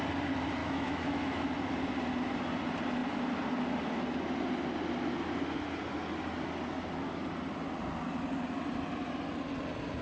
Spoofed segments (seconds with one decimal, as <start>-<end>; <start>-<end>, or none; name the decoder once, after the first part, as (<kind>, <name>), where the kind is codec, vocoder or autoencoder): 0.6-1.5 (autoencoder, DAC-VAE)

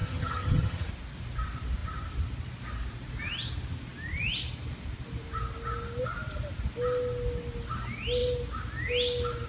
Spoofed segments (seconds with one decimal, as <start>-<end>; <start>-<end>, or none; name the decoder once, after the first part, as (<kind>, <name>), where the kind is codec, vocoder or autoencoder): 0.0-0.9 (vocoder, HiFi-GAN)

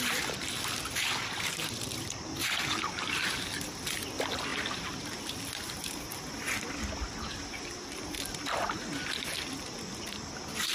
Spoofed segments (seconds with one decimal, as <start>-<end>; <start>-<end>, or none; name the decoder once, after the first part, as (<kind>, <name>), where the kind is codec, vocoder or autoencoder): none

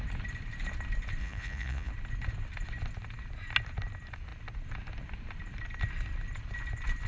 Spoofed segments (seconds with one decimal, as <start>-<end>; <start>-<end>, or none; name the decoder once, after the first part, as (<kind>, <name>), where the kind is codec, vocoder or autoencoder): 1.2-1.9 (vocoder, Vocos)